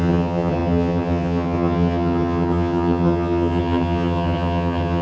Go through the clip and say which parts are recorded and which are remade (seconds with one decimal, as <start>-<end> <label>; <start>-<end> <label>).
0.0-5.0 remade